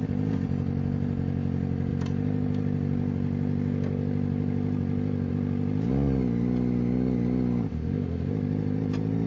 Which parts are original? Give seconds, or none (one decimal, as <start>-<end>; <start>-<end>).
0.0-7.7; 8.3-9.3